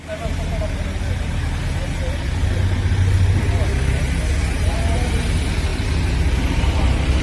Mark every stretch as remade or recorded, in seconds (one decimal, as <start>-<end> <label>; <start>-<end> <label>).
0.0-7.2 recorded